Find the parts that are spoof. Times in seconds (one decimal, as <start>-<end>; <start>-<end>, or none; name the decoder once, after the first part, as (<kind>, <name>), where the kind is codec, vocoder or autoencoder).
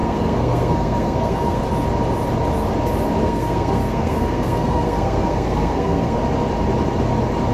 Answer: 0.0-1.6 (codec, SNAC); 3.2-6.2